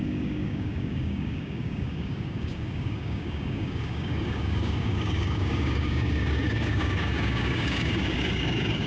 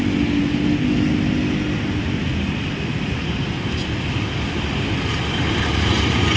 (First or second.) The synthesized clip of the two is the first